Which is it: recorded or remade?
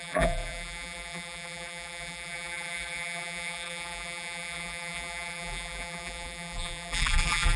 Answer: remade